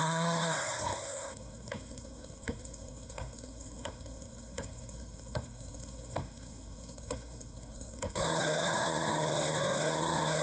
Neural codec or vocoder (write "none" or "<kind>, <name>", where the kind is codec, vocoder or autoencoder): codec, SNAC